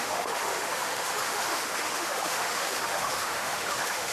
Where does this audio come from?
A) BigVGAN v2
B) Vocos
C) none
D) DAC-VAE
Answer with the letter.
D